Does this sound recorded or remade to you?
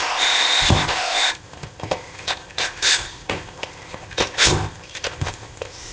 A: remade